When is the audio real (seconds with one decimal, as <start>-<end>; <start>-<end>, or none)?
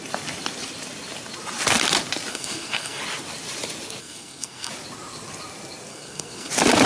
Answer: 0.0-2.3; 3.0-4.0; 4.7-5.9; 6.5-6.9